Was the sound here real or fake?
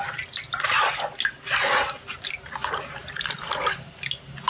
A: real